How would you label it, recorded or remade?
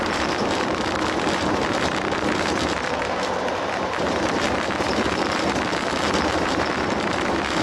remade